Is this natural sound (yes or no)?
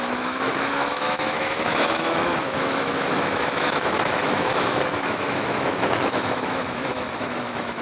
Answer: no